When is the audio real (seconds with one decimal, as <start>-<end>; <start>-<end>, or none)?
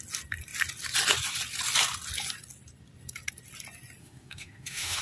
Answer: 0.0-4.0